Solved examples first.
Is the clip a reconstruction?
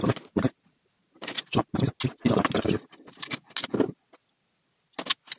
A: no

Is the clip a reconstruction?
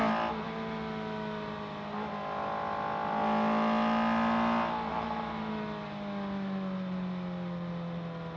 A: no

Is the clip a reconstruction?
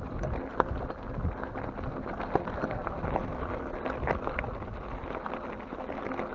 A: no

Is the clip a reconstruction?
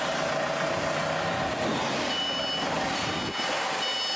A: no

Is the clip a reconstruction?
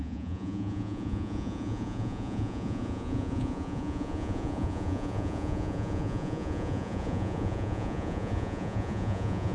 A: yes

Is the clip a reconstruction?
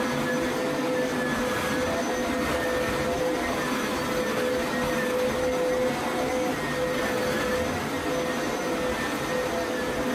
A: no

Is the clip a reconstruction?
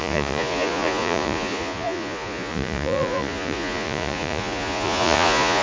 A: yes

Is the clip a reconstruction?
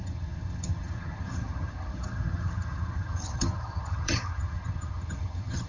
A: yes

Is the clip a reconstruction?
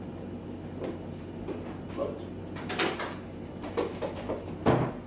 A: no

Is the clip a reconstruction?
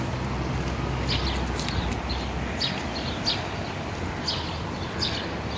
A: no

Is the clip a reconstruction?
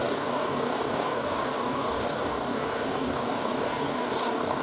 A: yes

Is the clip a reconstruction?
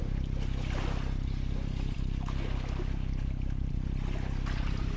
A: no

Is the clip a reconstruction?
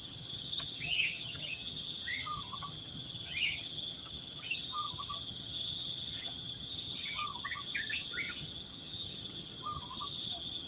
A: yes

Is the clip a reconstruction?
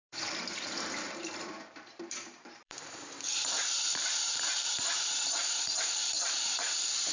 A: yes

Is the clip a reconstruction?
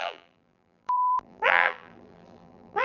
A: yes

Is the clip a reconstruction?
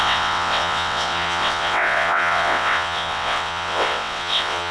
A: yes